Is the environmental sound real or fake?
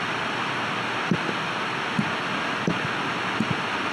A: real